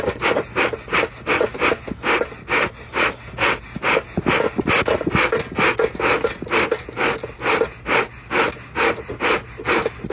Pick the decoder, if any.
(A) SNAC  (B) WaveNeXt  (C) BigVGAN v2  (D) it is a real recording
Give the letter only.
D